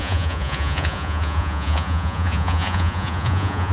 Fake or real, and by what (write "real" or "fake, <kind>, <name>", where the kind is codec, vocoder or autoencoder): fake, vocoder, Vocos